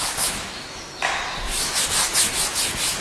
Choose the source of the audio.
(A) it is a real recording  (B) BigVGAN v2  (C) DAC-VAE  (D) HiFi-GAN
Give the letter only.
C